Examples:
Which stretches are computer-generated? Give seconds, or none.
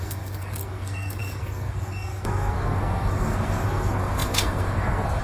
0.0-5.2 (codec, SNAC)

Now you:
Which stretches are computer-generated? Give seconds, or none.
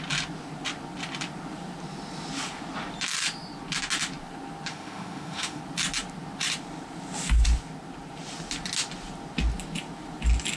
4.7-5.6 (autoencoder, DAC-VAE)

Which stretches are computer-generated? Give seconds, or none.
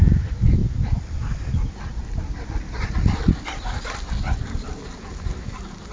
0.6-4.1 (vocoder, BigVGAN v2)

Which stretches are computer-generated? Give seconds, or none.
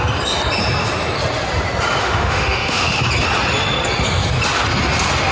2.0-3.0 (autoencoder, DAC-VAE)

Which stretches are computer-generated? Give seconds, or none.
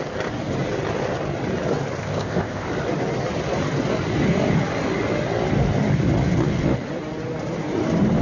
2.0-2.7 (codec, ZipCodec)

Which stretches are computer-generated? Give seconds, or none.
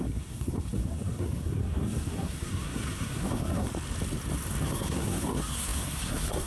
0.0-3.7 (codec, SNAC); 4.6-6.5